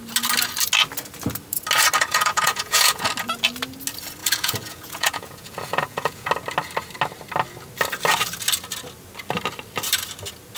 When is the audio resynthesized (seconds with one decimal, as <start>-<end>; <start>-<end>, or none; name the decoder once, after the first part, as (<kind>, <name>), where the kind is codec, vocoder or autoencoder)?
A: 2.1-3.1 (vocoder, Vocos); 4.2-6.3